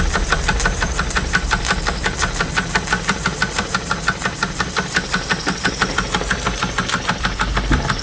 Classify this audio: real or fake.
fake